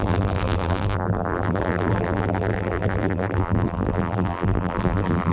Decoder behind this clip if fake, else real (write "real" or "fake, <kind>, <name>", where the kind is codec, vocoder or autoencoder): fake, vocoder, BigVGAN v2